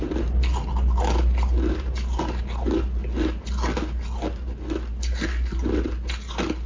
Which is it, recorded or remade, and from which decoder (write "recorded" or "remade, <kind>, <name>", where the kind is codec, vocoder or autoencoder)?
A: recorded